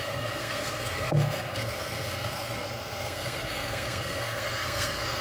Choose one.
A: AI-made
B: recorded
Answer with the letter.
A